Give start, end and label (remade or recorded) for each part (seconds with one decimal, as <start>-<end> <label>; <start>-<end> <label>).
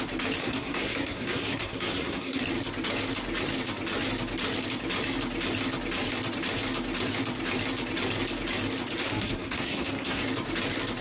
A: 0.0-0.4 recorded; 0.4-2.4 remade; 2.4-9.0 recorded; 9.0-10.2 remade; 10.2-11.0 recorded